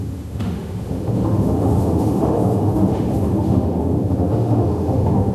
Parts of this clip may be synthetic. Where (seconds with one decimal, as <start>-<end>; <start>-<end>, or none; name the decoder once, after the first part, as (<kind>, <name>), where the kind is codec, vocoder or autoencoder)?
0.0-5.3 (autoencoder, DAC-VAE)